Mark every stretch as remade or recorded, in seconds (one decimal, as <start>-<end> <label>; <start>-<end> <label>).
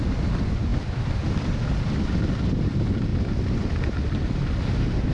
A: 0.0-0.7 recorded; 0.7-2.2 remade; 2.2-3.1 recorded; 3.1-4.6 remade; 4.6-5.1 recorded